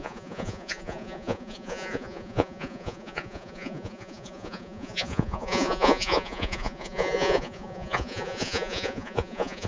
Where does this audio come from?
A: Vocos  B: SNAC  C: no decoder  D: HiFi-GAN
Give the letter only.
A